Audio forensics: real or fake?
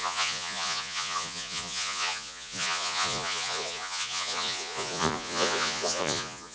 fake